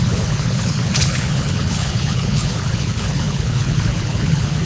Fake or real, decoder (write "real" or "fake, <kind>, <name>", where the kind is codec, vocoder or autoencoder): fake, codec, HILCodec